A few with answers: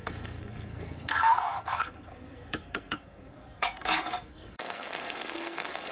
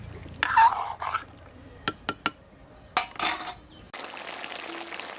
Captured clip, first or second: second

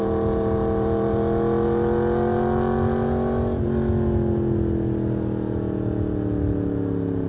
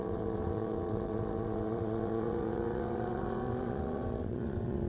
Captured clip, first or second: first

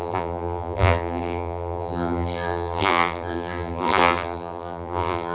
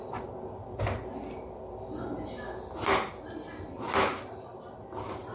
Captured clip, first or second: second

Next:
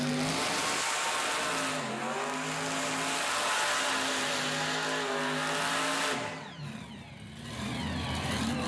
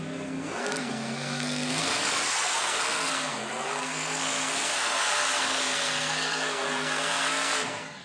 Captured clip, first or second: first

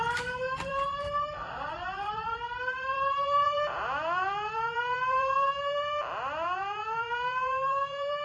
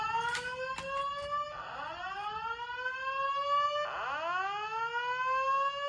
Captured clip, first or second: second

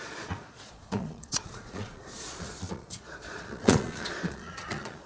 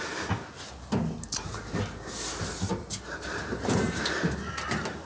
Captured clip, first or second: second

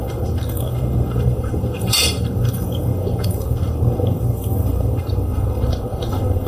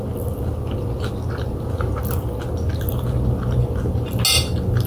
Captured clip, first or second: second